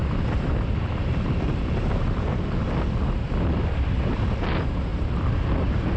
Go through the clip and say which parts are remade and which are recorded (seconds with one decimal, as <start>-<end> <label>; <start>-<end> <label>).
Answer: 0.0-2.3 remade; 2.3-4.9 recorded; 4.9-6.0 remade